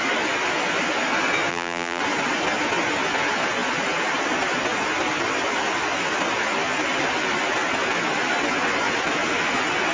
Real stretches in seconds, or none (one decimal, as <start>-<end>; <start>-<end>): 0.0-1.5; 2.0-9.9